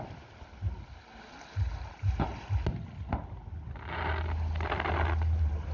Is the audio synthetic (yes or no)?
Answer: no